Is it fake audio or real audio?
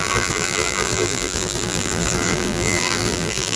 fake